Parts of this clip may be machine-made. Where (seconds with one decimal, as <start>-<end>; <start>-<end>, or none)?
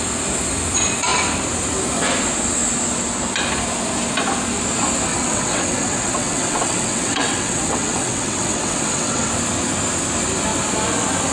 5.1-9.3